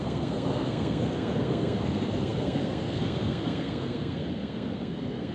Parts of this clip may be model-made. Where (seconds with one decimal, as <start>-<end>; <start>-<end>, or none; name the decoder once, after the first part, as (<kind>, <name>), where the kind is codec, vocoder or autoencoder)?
0.0-5.3 (codec, SNAC)